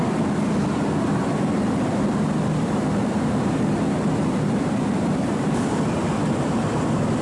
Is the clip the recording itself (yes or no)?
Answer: yes